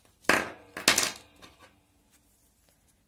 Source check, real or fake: real